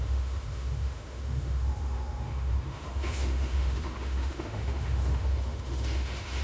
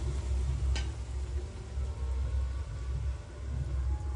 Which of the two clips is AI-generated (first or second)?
first